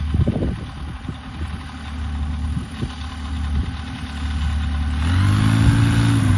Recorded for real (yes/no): yes